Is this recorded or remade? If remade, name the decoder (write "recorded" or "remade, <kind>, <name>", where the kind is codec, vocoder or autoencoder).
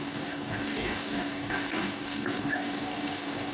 remade, codec, DAC